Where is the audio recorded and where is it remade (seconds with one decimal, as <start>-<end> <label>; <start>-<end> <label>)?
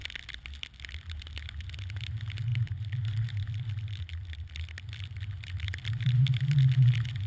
0.0-2.5 recorded; 2.5-6.1 remade; 6.1-7.3 recorded